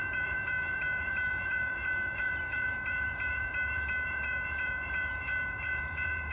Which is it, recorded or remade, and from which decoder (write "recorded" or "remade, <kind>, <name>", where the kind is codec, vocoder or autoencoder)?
remade, vocoder, BigVGAN v2